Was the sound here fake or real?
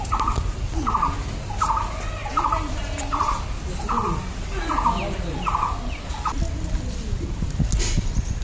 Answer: real